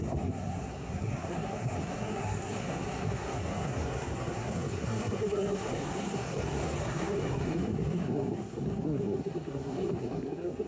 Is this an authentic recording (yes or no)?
no